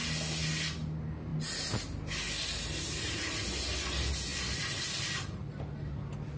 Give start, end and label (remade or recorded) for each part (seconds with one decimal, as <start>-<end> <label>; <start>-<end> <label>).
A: 0.0-6.4 recorded